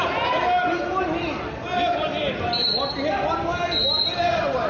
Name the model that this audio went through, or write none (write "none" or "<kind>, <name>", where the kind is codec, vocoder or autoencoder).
none